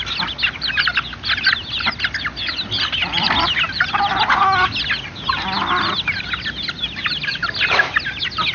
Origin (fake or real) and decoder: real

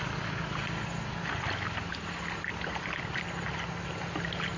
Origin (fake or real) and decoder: real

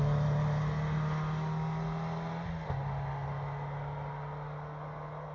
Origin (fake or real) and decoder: real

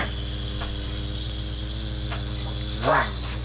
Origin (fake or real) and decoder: real